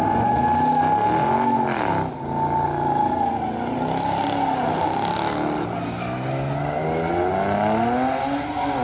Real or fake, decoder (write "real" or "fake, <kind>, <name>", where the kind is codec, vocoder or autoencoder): real